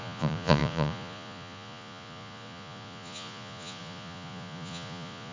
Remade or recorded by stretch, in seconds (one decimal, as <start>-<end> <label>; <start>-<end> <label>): 0.0-5.3 remade